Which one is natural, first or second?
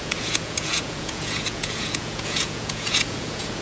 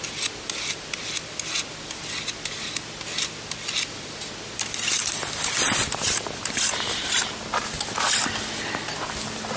second